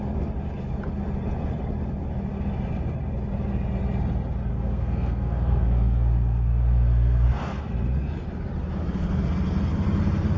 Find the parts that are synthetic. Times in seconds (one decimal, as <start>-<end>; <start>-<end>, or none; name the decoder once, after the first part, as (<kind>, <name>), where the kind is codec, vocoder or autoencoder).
4.5-7.6 (codec, SNAC)